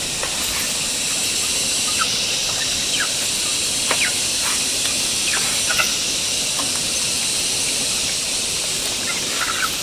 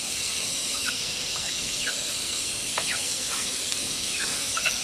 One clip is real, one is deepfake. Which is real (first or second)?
first